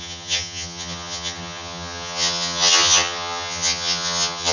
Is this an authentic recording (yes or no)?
no